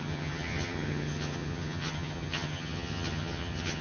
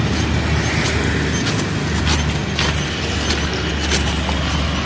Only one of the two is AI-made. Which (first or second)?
first